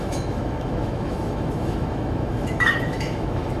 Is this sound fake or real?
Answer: fake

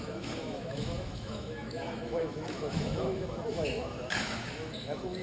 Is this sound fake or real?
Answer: fake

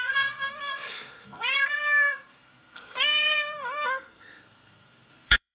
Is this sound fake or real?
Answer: fake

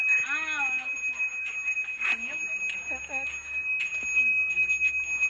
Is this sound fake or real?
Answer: real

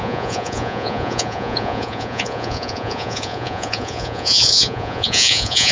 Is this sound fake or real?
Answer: fake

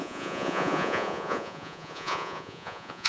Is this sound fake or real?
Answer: fake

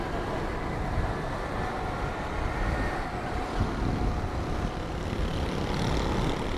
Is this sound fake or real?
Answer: fake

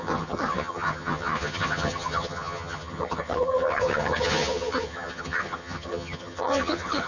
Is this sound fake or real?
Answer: fake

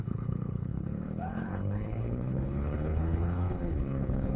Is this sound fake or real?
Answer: fake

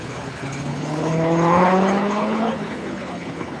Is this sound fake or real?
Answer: fake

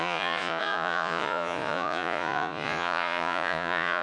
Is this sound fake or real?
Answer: fake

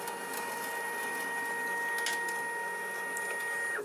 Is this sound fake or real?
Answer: real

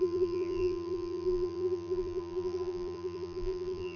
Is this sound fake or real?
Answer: fake